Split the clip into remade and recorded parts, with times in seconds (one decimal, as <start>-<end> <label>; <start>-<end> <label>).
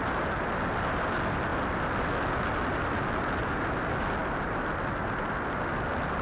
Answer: 0.0-6.2 recorded